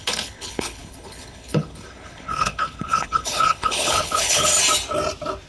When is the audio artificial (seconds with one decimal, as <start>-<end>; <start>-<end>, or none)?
0.0-4.5